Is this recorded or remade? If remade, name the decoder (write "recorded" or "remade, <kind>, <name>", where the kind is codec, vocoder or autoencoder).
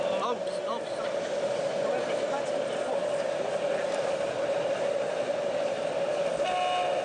recorded